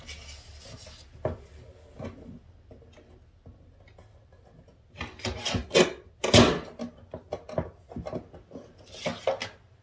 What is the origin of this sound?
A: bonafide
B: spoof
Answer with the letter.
A